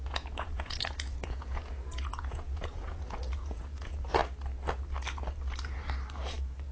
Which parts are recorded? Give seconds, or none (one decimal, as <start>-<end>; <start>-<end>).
4.2-6.7

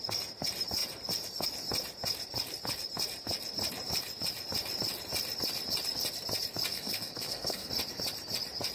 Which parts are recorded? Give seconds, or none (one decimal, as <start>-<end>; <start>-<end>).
0.0-6.7; 7.7-8.7

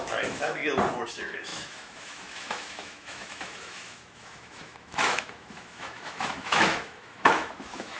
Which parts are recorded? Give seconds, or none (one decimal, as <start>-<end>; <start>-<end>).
0.6-1.1